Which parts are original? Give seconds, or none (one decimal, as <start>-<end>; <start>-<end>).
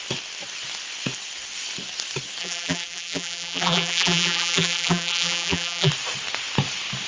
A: 0.0-2.4; 5.9-7.1